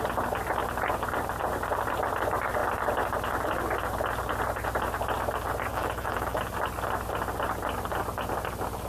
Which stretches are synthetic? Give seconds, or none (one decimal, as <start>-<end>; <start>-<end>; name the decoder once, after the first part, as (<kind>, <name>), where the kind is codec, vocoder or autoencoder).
5.7-6.4 (autoencoder, DAC-VAE)